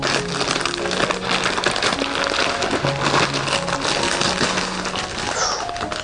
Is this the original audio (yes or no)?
yes